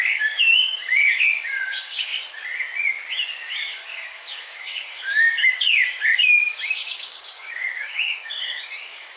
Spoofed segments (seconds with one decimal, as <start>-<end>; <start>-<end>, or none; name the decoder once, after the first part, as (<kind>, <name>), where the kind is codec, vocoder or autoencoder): 0.0-2.1 (codec, DAC); 3.1-9.2